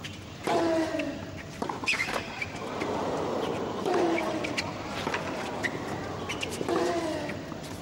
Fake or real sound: real